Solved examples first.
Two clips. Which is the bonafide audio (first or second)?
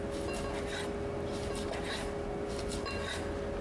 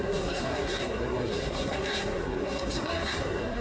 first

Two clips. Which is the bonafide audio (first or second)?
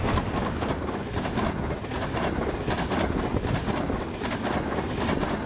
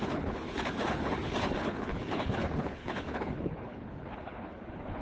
first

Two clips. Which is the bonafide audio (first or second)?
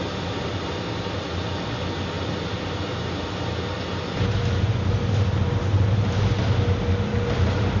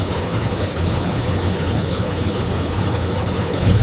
first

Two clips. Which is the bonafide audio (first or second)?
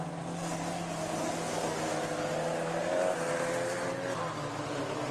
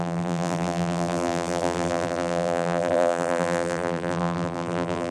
first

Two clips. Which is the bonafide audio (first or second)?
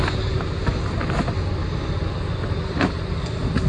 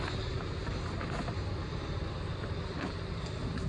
first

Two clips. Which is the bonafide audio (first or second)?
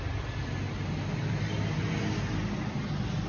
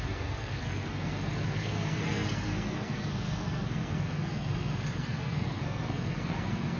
first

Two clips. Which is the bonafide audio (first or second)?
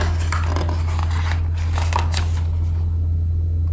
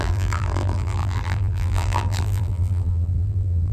first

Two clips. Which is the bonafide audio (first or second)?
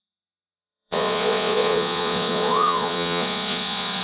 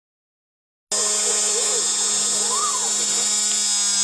second